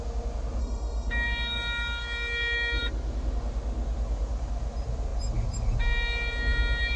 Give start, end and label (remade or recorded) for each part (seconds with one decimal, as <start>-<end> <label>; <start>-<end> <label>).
0.0-0.6 recorded; 0.6-1.1 remade; 1.1-7.0 recorded